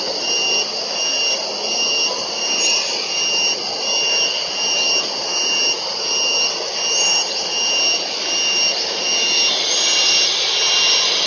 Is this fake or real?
real